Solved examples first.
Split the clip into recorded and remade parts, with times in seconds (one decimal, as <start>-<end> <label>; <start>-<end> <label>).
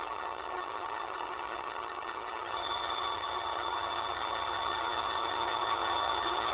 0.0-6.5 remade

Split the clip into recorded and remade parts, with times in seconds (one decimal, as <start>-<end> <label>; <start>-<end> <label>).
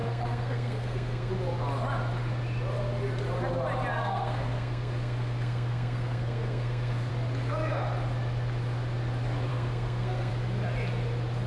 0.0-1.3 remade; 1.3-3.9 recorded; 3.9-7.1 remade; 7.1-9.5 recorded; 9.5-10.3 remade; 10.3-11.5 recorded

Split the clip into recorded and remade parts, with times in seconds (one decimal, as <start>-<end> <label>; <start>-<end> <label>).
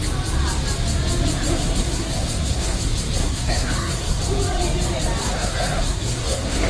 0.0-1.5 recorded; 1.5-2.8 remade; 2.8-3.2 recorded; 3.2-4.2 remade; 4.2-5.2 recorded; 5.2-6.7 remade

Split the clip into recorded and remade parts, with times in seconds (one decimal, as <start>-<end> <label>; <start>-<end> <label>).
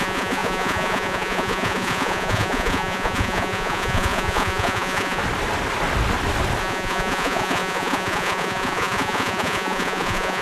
0.0-5.2 remade; 5.2-6.6 recorded; 6.6-10.4 remade